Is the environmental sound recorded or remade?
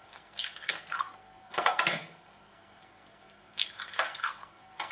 remade